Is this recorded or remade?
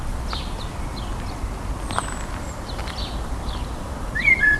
recorded